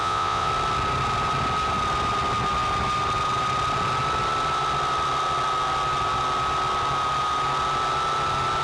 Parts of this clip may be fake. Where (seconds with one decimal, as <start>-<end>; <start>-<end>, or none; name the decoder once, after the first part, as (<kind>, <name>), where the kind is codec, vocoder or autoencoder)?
0.0-0.5 (vocoder, Vocos)